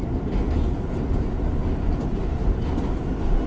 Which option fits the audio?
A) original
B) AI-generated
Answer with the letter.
A